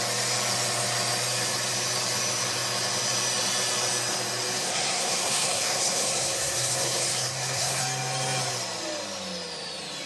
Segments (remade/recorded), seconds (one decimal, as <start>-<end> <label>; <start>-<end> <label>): 0.0-4.6 recorded; 4.6-7.8 remade; 7.8-10.1 recorded